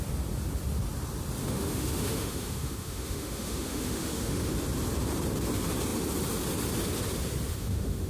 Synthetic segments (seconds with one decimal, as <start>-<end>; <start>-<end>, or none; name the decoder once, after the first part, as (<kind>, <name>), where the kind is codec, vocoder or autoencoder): 1.4-4.5 (autoencoder, DAC-VAE); 7.5-8.1